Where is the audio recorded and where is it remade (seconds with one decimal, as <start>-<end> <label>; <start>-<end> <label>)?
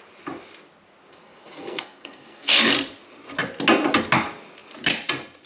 0.0-1.1 recorded; 1.1-2.7 remade; 2.7-5.5 recorded